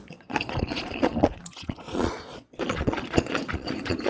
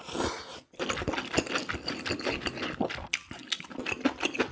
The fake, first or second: first